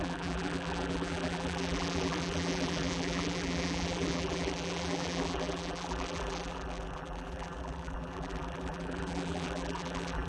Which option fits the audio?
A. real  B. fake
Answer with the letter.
B